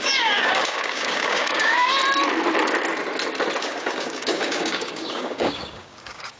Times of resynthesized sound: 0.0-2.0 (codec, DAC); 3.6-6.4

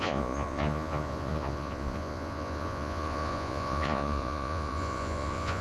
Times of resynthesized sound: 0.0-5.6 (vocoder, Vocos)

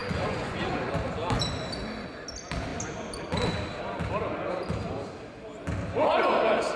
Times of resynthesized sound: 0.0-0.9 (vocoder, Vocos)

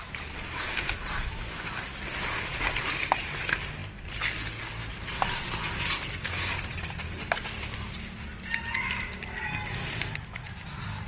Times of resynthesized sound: none

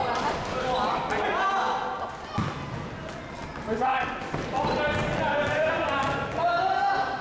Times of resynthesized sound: 5.0-6.7 (vocoder, BigVGAN v2)

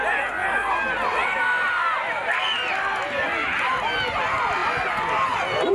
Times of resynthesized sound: none

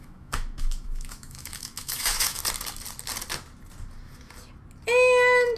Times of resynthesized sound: 0.0-2.4 (autoencoder, DAC-VAE)

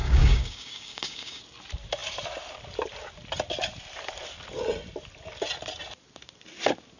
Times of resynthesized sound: 0.0-1.4 (codec, DAC)